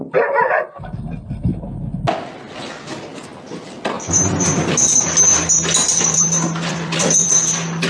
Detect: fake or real real